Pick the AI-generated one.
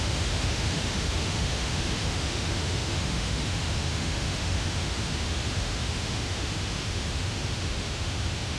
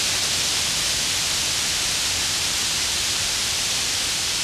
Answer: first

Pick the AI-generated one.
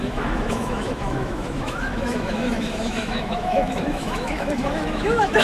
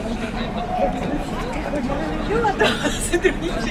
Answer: first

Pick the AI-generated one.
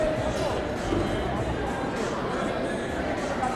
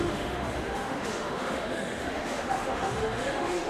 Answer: second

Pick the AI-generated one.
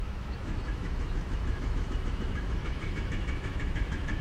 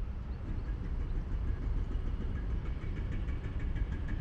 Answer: first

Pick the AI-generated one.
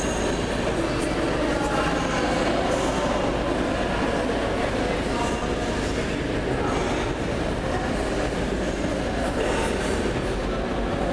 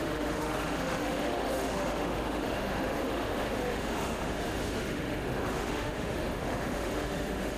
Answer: second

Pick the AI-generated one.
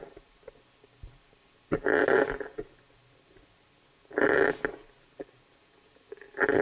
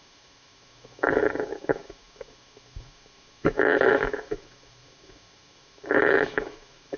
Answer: second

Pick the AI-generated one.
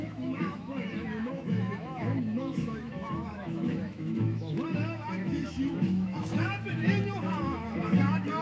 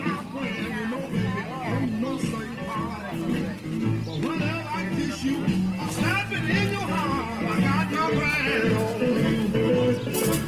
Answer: first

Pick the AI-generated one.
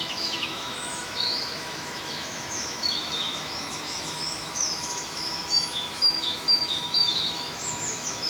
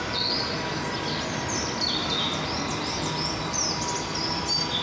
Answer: first